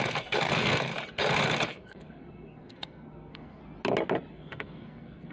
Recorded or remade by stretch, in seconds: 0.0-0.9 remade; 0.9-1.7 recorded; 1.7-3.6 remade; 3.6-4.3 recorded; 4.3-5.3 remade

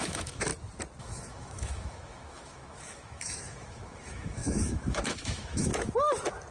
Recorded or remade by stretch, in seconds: 0.0-0.5 remade; 0.5-1.0 recorded; 1.0-5.7 remade; 5.7-6.5 recorded

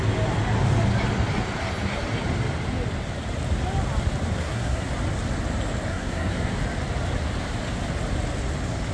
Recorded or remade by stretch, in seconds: 0.0-4.4 recorded; 4.4-4.9 remade; 4.9-5.9 recorded; 5.9-6.6 remade; 6.6-8.9 recorded

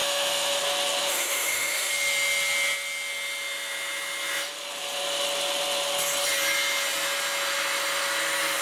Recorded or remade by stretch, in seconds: 0.0-0.6 remade; 0.6-1.0 recorded; 1.0-1.9 remade; 1.9-8.6 recorded

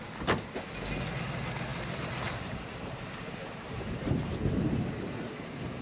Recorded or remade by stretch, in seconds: 0.0-1.7 recorded; 1.7-5.2 remade; 5.2-5.8 recorded

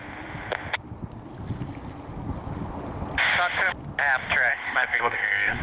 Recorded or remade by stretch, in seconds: 0.0-4.5 recorded; 4.5-5.6 remade